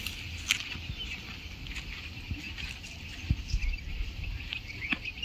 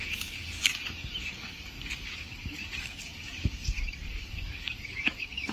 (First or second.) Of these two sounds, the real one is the first